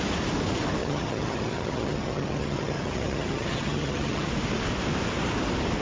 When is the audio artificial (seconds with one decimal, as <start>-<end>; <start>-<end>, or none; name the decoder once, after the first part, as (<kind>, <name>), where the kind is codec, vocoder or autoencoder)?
0.8-4.3 (vocoder, HiFi-GAN)